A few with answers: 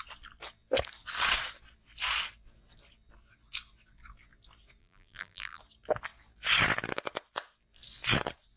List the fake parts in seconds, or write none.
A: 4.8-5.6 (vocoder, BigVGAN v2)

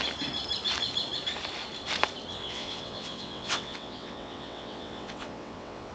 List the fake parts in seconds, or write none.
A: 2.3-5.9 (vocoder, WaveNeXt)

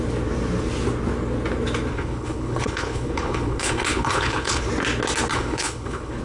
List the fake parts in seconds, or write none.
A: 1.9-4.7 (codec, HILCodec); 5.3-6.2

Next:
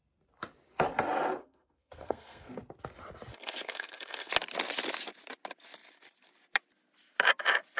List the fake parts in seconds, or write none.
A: 1.4-2.5 (codec, SNAC); 3.3-4.3